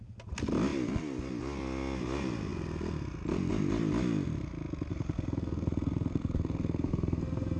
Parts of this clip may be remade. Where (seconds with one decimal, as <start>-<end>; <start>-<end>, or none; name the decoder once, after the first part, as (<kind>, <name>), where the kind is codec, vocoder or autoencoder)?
4.9-7.6 (codec, SNAC)